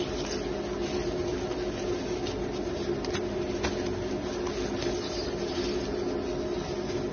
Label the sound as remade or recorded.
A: recorded